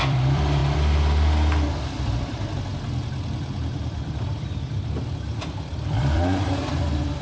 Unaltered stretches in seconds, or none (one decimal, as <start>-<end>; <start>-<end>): none